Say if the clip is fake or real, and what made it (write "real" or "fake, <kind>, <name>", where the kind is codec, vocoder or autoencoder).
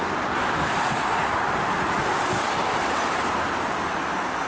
real